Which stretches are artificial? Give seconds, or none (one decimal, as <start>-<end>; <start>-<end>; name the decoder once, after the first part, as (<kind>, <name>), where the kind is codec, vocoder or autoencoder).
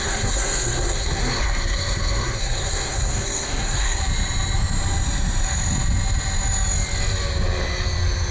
0.0-4.0 (codec, SNAC)